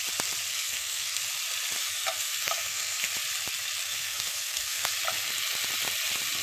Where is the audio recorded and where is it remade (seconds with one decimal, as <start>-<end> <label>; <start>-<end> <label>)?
0.0-0.5 recorded; 0.5-1.2 remade; 1.2-1.8 recorded; 1.8-3.1 remade; 3.1-3.9 recorded; 3.9-4.9 remade; 4.9-6.4 recorded

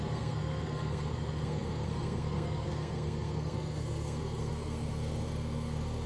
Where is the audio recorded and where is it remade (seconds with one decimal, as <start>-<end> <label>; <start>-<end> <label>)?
0.0-6.1 remade

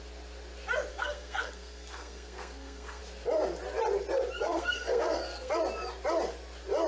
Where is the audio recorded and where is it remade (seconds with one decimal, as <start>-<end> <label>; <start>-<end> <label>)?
0.0-0.9 recorded; 0.9-3.0 remade; 3.0-4.4 recorded; 4.4-5.5 remade; 5.5-6.9 recorded

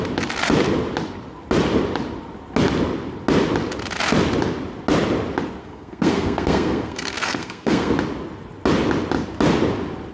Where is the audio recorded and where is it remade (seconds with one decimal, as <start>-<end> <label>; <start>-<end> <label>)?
0.0-5.6 recorded; 5.6-7.9 remade; 7.9-10.1 recorded